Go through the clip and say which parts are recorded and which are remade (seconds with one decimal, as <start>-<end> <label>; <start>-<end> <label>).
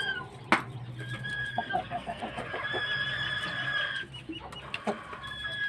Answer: 0.0-1.5 recorded; 1.5-2.2 remade; 2.2-5.7 recorded